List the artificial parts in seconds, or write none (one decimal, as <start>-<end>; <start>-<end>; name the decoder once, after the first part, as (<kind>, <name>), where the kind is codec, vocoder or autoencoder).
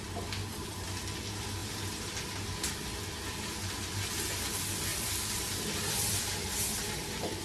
4.9-6.3 (vocoder, BigVGAN v2)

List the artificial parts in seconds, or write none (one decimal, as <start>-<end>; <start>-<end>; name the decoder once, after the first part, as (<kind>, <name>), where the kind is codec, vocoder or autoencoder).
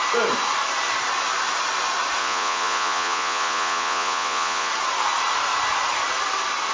2.2-4.7 (vocoder, Vocos)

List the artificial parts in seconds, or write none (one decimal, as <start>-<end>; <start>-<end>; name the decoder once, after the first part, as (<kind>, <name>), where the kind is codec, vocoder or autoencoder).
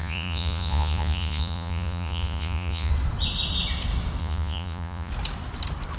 0.0-2.9 (vocoder, Vocos); 4.2-5.1